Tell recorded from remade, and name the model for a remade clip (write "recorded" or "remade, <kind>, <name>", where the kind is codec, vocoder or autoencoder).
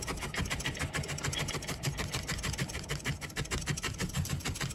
recorded